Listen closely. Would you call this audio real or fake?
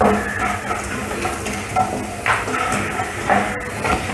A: real